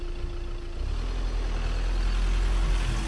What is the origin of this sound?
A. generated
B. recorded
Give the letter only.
B